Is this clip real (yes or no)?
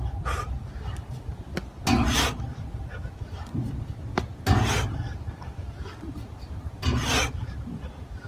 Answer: yes